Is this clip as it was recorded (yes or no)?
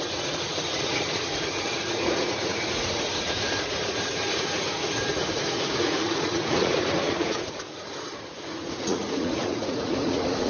no